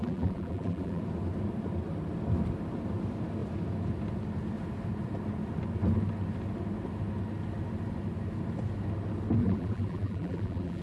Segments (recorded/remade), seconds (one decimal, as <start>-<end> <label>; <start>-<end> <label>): 0.0-1.0 remade; 1.0-9.4 recorded; 9.4-10.8 remade